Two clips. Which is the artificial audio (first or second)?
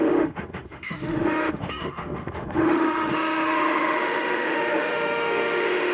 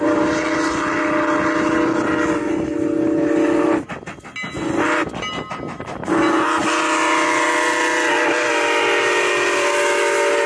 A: first